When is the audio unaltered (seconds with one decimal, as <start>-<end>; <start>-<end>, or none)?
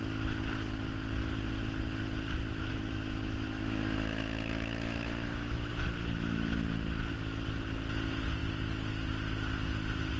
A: 0.0-2.7; 5.7-10.2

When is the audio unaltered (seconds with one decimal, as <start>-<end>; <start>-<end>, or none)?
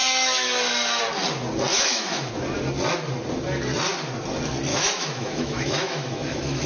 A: 1.0-1.7; 2.3-4.7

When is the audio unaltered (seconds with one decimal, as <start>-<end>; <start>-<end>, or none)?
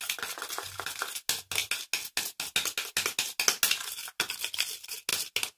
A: 0.0-5.6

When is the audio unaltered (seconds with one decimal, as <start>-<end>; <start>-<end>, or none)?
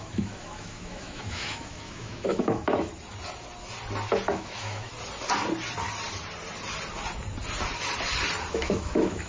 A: 2.9-4.3; 4.9-8.5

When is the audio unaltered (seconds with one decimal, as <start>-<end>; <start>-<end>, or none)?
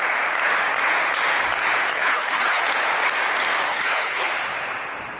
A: 0.0-1.9; 2.6-3.7; 4.3-5.2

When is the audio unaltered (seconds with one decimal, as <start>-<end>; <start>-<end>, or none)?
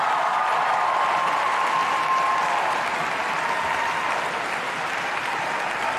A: 0.0-6.0